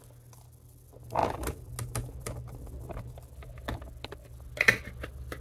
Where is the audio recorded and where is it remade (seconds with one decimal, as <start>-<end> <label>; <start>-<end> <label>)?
0.0-5.4 recorded